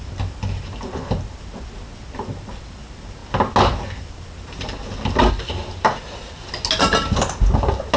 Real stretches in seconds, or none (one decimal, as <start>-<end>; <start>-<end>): 0.0-8.0